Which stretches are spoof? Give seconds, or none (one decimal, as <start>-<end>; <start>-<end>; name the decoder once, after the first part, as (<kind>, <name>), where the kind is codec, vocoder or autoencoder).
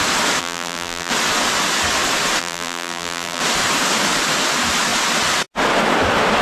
0.4-1.1 (vocoder, BigVGAN v2); 2.4-3.4